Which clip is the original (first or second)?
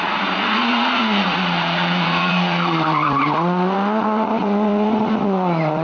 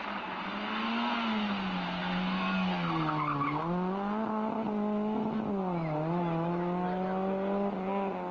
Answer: second